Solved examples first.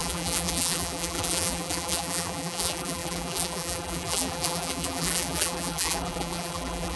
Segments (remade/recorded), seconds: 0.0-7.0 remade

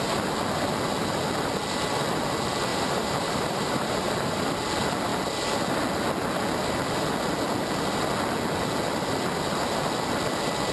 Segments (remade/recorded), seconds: 0.0-2.7 recorded; 2.7-4.5 remade; 4.5-10.7 recorded

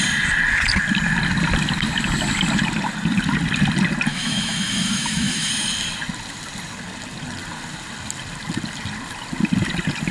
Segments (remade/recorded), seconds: 0.0-4.1 recorded; 4.1-5.5 remade; 5.5-10.1 recorded

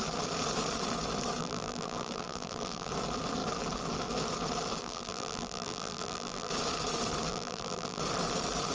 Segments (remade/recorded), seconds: 0.0-1.4 recorded; 1.4-2.9 remade; 2.9-4.8 recorded; 4.8-6.5 remade; 6.5-7.3 recorded; 7.3-8.0 remade; 8.0-8.7 recorded